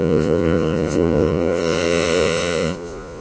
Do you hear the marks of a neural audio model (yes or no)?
yes